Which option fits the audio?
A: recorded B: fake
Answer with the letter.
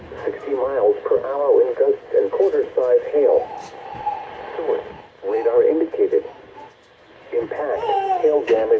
A